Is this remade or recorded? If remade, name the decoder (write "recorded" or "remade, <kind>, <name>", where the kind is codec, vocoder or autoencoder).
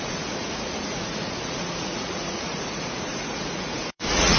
remade, vocoder, Vocos